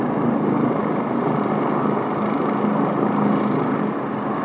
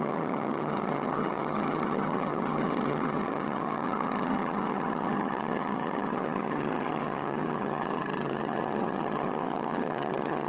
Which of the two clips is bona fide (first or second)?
first